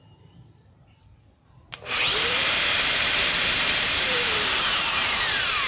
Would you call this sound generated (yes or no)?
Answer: yes